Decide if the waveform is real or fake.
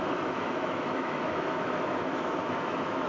fake